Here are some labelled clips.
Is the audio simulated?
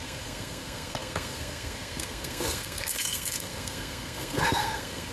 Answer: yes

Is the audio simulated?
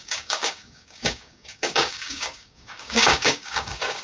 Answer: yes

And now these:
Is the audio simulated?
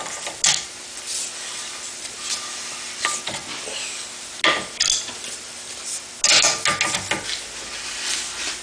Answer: no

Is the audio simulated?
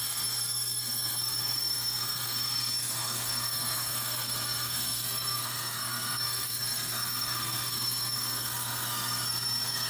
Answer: yes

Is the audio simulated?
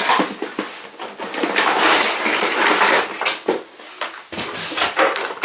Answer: no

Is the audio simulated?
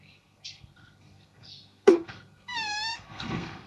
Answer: yes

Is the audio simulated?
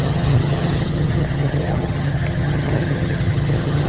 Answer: yes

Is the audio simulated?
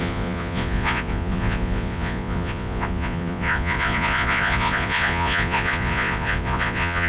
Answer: yes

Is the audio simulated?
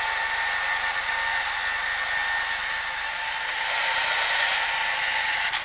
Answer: no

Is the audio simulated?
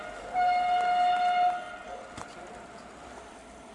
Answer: no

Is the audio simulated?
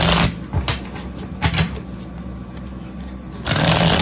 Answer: no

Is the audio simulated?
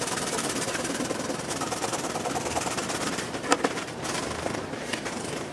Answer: yes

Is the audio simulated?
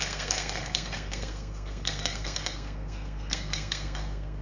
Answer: yes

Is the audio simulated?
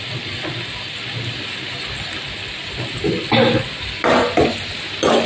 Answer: no